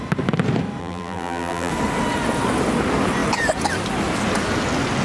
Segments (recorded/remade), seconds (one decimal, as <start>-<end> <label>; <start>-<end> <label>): 0.0-0.8 recorded; 0.8-1.7 remade; 1.7-5.0 recorded